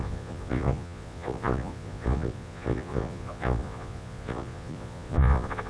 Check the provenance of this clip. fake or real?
fake